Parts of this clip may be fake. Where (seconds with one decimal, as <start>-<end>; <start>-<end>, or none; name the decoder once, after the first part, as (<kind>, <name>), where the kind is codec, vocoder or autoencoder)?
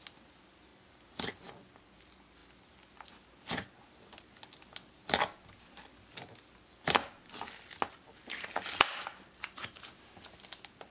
0.7-1.3 (vocoder, BigVGAN v2)